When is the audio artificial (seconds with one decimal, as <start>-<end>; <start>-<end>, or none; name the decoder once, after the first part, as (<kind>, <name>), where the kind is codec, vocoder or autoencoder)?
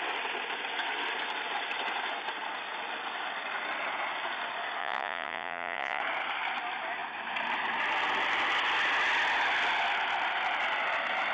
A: 4.8-6.0 (vocoder, Vocos)